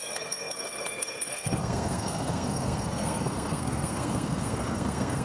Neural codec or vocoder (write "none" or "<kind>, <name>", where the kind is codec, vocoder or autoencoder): codec, SNAC